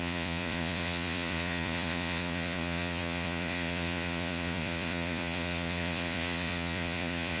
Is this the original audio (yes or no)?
no